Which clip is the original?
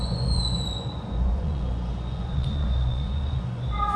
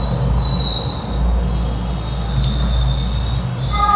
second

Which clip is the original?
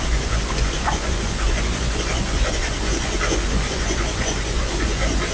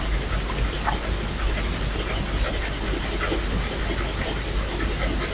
second